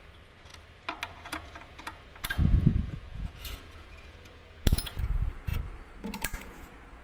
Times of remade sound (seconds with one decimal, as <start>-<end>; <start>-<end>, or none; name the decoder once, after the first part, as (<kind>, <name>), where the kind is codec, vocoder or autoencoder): 0.0-0.5 (vocoder, Vocos); 1.1-5.5; 6.2-7.0